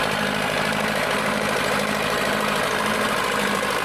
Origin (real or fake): fake